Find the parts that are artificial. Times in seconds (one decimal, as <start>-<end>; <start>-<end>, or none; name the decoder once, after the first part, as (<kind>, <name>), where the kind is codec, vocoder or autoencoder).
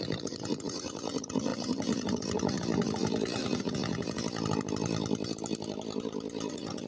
0.0-4.2 (vocoder, Vocos); 6.5-6.9